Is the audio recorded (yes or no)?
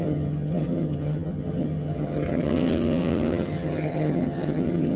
no